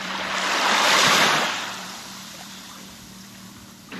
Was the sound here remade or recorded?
remade